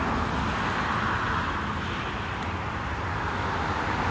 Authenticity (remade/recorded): recorded